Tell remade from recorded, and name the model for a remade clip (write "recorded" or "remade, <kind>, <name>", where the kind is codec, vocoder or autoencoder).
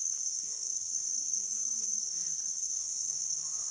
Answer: remade, codec, SNAC